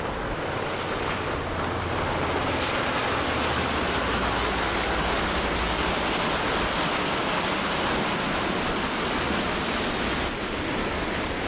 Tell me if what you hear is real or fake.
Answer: real